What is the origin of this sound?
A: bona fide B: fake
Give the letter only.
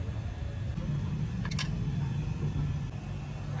A